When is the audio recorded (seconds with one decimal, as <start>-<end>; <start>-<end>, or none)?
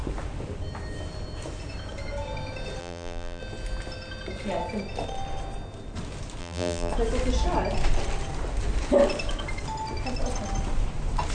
0.0-2.8; 3.4-6.4; 6.9-11.3